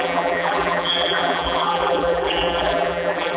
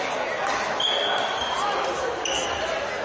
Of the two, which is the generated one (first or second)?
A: first